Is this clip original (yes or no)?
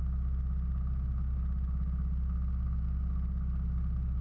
yes